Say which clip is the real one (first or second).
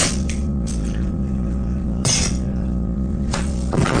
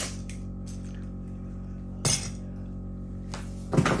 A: second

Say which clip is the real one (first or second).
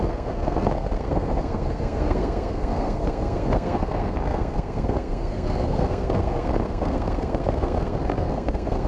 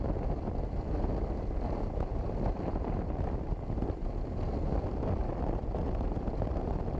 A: second